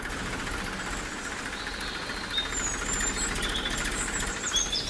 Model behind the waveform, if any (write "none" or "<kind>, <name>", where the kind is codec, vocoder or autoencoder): none